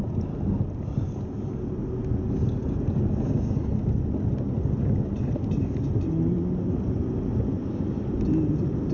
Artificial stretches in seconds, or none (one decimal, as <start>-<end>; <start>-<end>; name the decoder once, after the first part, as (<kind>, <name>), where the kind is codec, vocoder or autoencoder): 2.6-3.3 (vocoder, BigVGAN v2)